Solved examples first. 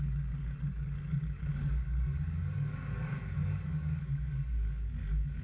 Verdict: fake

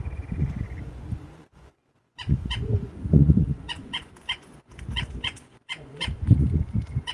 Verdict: fake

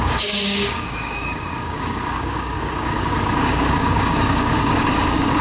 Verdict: fake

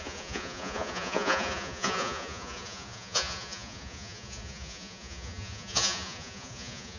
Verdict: fake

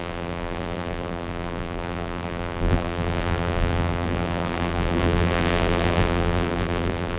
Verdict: fake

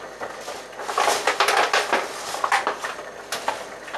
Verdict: real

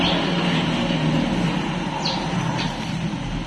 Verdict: real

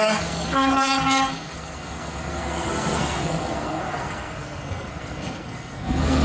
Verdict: fake